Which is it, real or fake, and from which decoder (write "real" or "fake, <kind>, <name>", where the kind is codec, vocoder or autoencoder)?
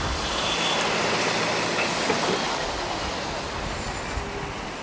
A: real